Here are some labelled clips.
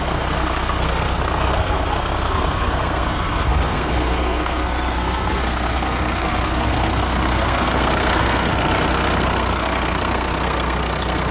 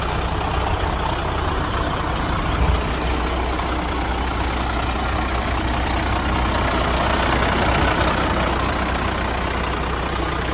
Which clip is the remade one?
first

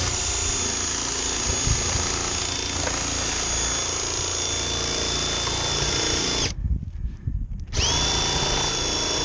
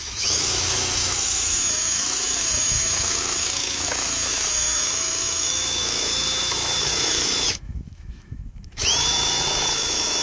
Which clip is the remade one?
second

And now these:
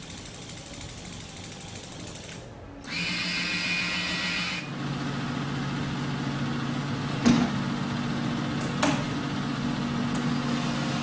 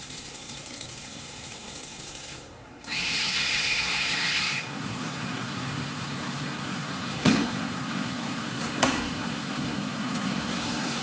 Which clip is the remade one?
second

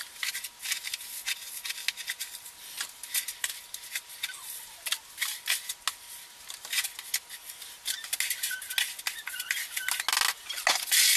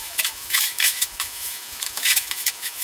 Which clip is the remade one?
second